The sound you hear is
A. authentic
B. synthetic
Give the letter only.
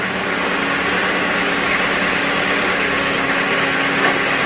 B